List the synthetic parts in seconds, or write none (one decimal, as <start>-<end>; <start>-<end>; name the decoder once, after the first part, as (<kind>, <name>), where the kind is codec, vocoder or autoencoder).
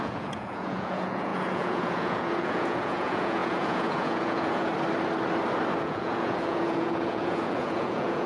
0.0-4.7 (vocoder, Vocos); 5.8-8.3